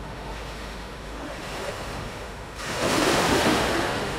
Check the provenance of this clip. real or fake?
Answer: fake